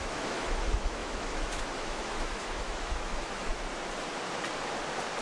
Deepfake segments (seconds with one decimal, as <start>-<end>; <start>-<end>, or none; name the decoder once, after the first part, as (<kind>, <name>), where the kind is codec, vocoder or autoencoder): 0.0-3.5 (autoencoder, DAC-VAE)